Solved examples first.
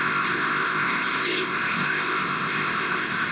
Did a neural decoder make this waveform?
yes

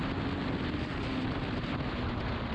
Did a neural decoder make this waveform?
no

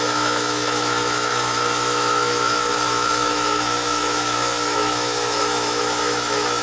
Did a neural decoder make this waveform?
yes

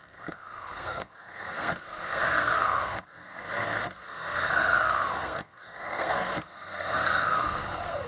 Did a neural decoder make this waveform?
yes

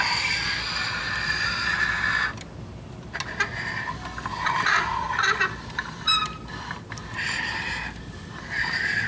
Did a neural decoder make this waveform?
no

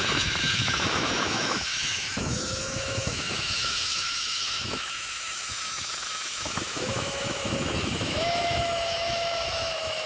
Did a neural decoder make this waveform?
yes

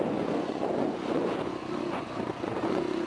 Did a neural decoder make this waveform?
yes